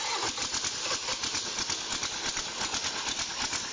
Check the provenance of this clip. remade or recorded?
recorded